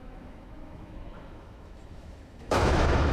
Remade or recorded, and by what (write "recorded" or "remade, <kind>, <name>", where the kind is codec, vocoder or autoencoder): remade, autoencoder, DAC-VAE